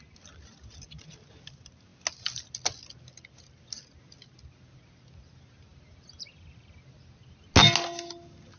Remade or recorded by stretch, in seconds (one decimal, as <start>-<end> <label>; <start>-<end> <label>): 0.0-8.6 recorded